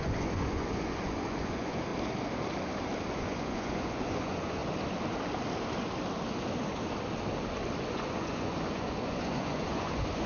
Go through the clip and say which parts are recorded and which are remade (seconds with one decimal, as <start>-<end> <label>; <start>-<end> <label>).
0.0-1.9 remade; 1.9-3.1 recorded; 3.1-4.6 remade; 4.6-7.9 recorded; 7.9-10.3 remade